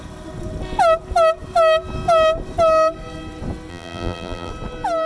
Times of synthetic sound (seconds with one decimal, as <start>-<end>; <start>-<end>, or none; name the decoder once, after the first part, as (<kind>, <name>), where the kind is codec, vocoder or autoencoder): 3.7-4.5 (vocoder, BigVGAN v2)